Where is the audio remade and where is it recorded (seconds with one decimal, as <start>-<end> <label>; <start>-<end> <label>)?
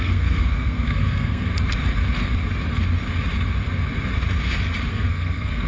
0.0-1.5 remade; 1.5-4.9 recorded; 4.9-5.7 remade